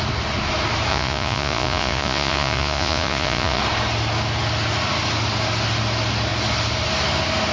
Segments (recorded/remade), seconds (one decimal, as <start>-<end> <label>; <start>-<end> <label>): 0.0-0.9 recorded; 0.9-3.6 remade; 3.6-7.5 recorded